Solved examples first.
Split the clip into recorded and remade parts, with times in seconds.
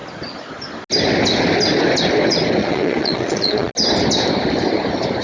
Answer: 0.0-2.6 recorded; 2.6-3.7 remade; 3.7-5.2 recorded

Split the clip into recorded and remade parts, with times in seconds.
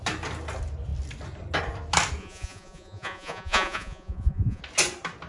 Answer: 0.0-2.2 recorded; 2.2-4.6 remade; 4.6-5.3 recorded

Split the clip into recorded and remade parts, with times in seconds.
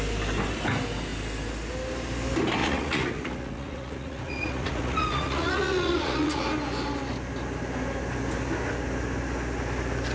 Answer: 0.0-2.6 recorded; 2.6-6.4 remade; 6.4-10.1 recorded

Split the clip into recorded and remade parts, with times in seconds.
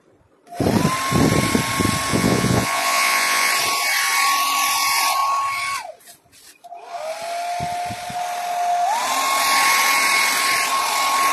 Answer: 0.0-2.1 recorded; 2.1-3.5 remade; 3.5-11.3 recorded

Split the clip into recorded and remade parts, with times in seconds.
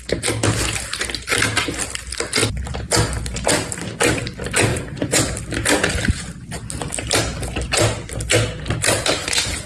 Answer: 0.0-4.7 recorded; 4.7-5.2 remade; 5.2-9.7 recorded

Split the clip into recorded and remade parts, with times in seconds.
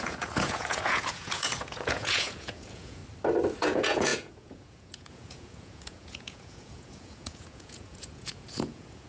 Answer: 0.0-3.0 remade; 3.0-3.6 recorded; 3.6-9.1 remade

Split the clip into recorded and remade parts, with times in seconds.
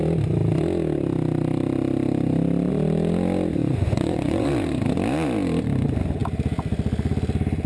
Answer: 0.0-3.6 recorded; 3.6-4.5 remade; 4.5-7.7 recorded